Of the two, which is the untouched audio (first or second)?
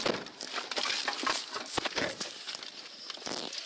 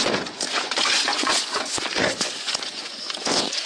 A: first